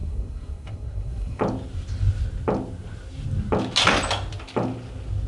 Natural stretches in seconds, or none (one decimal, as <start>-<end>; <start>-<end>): 1.4-5.3